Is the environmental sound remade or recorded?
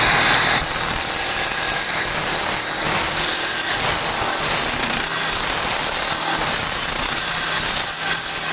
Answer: recorded